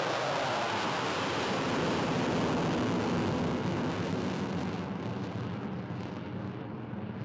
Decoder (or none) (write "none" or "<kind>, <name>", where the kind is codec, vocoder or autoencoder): none